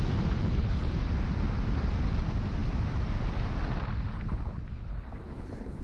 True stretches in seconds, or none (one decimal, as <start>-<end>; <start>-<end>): 0.0-0.4; 1.0-4.9